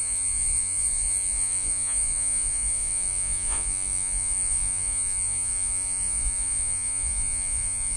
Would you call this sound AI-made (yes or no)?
yes